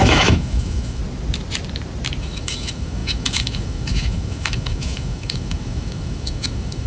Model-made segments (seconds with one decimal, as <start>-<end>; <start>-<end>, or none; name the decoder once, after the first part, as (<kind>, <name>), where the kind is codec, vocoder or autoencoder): 0.0-1.0 (autoencoder, DAC-VAE); 2.2-6.9